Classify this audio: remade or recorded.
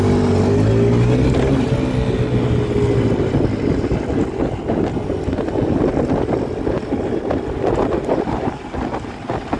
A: recorded